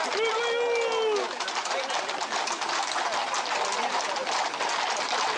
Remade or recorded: recorded